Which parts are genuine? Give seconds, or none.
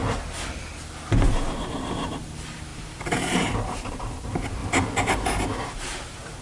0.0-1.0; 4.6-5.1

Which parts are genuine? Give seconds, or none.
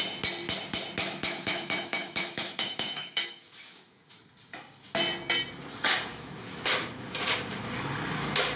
0.0-1.0; 4.2-6.1; 6.6-8.6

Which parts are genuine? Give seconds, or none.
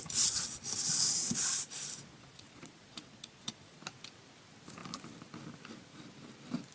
0.0-2.1; 3.8-6.7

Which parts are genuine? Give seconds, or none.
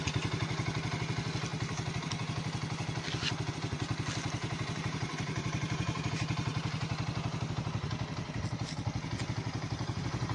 0.0-4.4; 6.1-10.3